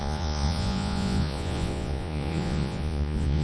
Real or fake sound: fake